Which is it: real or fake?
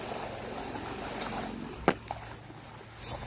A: real